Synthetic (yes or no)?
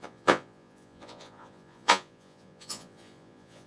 yes